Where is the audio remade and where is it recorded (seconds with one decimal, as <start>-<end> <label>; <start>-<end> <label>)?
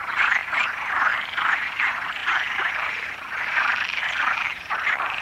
0.0-5.2 remade